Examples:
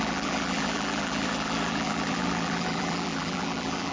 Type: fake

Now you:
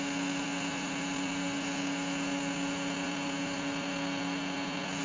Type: real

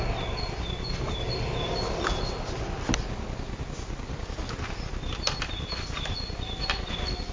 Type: real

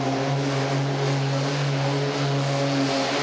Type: real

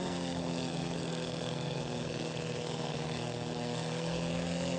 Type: fake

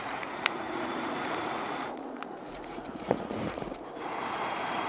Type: fake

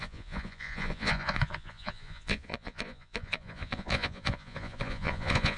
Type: fake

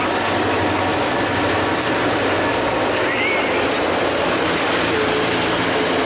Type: real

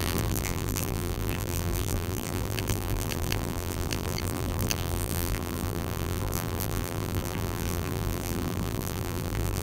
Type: fake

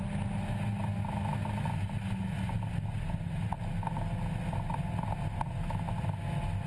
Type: real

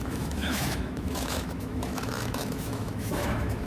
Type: fake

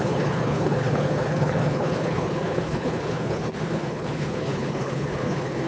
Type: fake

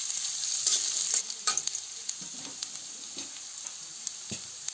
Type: real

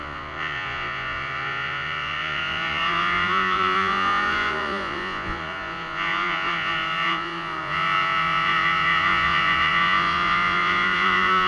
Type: fake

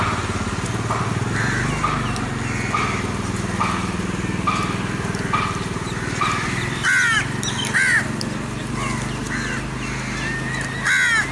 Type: real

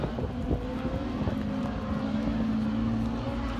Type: real